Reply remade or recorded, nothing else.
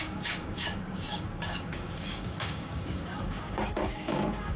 remade